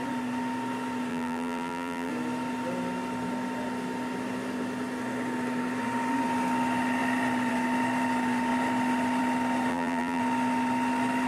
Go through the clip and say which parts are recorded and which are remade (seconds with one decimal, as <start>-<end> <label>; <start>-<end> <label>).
0.0-1.1 recorded; 1.1-2.1 remade; 2.1-9.7 recorded; 9.7-10.2 remade; 10.2-11.3 recorded